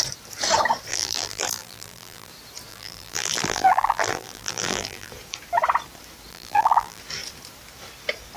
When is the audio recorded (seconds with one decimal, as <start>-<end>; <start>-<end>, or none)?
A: 0.0-0.9; 2.3-2.7; 5.1-6.3; 7.0-8.4